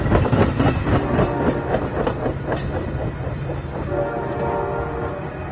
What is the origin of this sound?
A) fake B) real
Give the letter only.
B